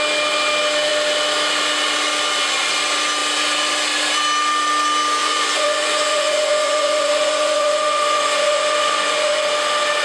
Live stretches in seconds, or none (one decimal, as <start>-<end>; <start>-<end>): 0.0-5.2; 9.5-10.0